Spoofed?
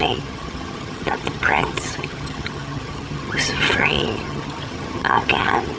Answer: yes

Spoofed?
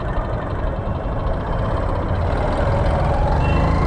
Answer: no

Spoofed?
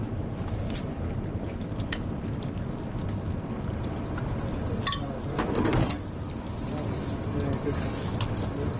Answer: no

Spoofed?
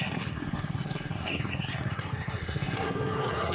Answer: yes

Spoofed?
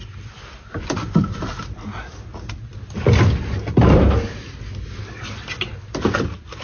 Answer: no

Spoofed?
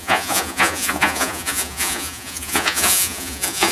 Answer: yes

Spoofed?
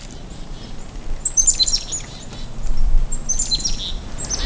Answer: no